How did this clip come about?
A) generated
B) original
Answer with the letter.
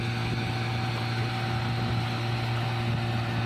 B